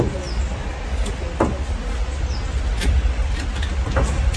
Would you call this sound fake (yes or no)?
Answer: no